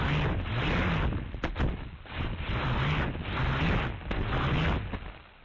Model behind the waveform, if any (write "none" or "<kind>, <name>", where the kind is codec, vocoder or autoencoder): none